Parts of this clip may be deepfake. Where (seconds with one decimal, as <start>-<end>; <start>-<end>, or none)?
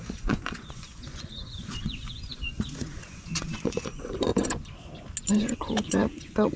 0.0-4.3; 5.3-6.6